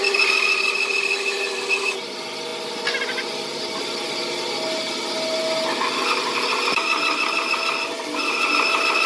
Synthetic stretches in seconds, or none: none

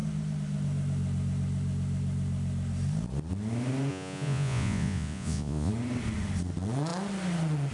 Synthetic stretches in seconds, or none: 3.9-5.7 (vocoder, Vocos)

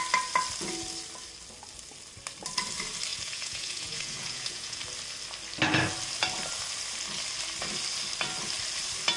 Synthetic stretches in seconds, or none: 3.1-4.8 (vocoder, Vocos)